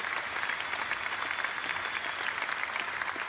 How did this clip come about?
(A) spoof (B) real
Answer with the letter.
B